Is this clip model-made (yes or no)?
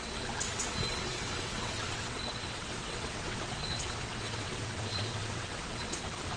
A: yes